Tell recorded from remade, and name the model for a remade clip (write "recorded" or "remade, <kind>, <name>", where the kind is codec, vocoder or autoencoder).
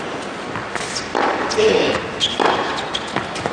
recorded